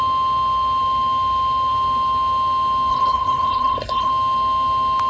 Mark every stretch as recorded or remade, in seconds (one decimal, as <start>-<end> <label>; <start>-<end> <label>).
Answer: 0.0-2.9 recorded; 2.9-4.1 remade; 4.1-5.1 recorded